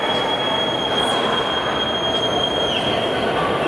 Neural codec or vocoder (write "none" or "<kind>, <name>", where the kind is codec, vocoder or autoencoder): none